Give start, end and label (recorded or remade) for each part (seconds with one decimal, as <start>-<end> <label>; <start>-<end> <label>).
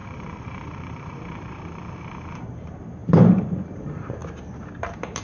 0.0-4.2 remade; 4.2-5.2 recorded